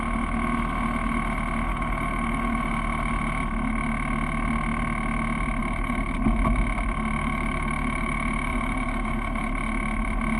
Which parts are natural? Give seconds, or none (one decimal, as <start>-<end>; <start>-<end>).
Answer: 0.0-1.7; 2.7-5.6; 6.1-7.2; 9.5-10.4